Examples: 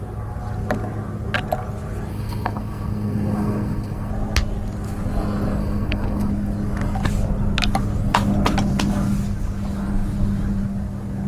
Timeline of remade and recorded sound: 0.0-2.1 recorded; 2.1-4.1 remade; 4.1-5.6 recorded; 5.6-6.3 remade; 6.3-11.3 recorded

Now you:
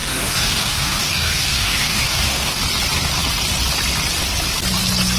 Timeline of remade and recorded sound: 0.0-2.6 remade; 2.6-5.2 recorded

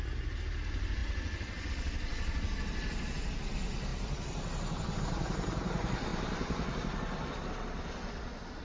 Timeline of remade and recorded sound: 0.0-8.6 recorded

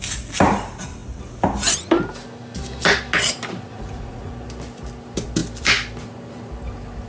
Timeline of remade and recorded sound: 0.0-3.7 recorded; 3.7-4.3 remade; 4.3-7.1 recorded